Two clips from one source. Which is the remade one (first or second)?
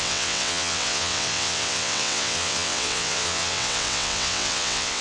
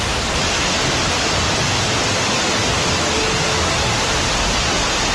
first